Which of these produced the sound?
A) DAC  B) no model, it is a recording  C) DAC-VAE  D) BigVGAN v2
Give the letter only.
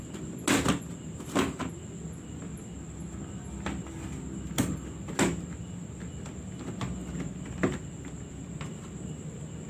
B